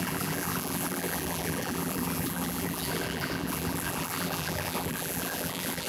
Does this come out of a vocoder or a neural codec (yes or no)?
yes